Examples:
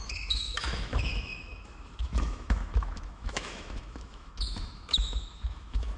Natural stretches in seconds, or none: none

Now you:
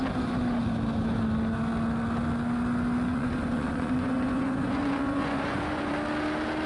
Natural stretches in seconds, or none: 0.0-3.1; 5.9-6.7

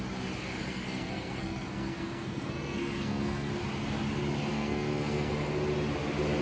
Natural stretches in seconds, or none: 0.0-0.6; 3.5-4.5; 5.3-6.4

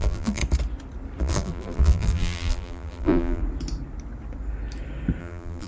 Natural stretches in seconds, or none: 0.4-1.2; 3.4-5.2

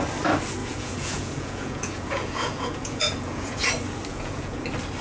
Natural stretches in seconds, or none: 0.0-0.6; 3.6-4.1; 4.6-5.0

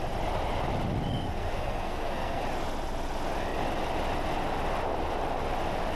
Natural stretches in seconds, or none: 0.0-1.1; 2.4-5.9